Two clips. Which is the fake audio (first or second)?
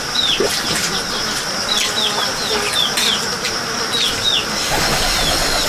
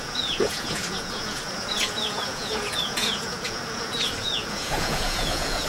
second